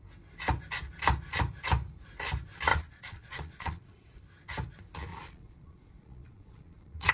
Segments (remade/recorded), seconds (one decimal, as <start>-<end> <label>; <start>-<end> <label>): 0.0-2.7 recorded; 2.7-4.2 remade; 4.2-5.1 recorded; 5.1-7.1 remade

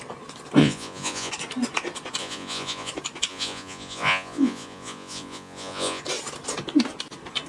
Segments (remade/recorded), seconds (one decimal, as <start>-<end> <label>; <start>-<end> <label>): 0.0-0.6 recorded; 0.6-1.3 remade; 1.3-2.2 recorded; 2.2-2.9 remade; 2.9-3.3 recorded; 3.3-6.0 remade; 6.0-7.5 recorded

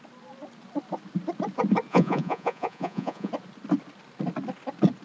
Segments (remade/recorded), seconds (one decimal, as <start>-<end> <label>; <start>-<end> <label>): 0.0-1.9 recorded; 1.9-3.3 remade; 3.3-5.0 recorded

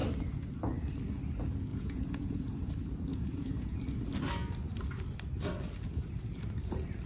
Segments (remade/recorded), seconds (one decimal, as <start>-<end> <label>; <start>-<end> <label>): 0.0-1.7 recorded; 1.7-2.7 remade; 2.7-3.1 recorded; 3.1-3.8 remade; 3.8-7.1 recorded